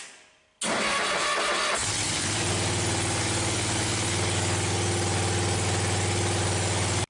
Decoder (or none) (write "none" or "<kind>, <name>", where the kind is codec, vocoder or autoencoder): none